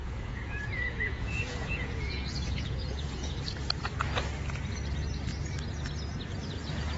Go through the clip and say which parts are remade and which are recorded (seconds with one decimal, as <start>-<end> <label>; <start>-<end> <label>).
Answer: 0.0-3.3 remade; 3.3-7.0 recorded